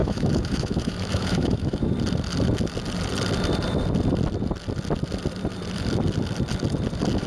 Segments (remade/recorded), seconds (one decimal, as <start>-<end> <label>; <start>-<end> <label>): 0.0-1.9 remade; 1.9-7.3 recorded